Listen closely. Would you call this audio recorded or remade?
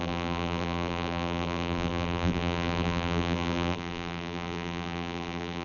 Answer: remade